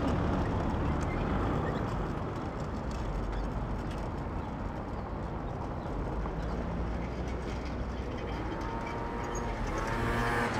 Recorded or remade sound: recorded